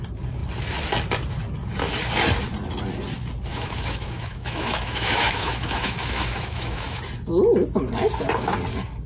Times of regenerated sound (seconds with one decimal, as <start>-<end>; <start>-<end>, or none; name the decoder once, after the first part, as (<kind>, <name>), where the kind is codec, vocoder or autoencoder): 3.5-7.0 (autoencoder, DAC-VAE)